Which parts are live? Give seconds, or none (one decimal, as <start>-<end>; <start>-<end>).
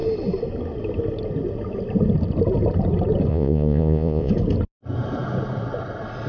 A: 0.0-3.3; 4.3-6.3